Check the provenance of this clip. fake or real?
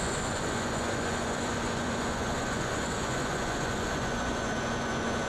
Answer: fake